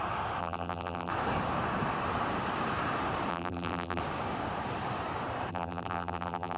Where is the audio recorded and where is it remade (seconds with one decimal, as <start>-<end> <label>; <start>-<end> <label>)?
0.0-0.4 recorded; 0.4-1.1 remade; 1.1-3.3 recorded; 3.3-4.0 remade; 4.0-5.5 recorded; 5.5-6.6 remade